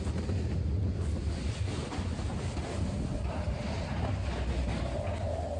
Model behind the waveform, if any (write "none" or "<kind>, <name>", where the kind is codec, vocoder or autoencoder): none